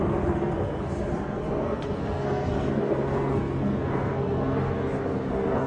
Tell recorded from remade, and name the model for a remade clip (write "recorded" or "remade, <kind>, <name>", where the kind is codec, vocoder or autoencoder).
remade, codec, SNAC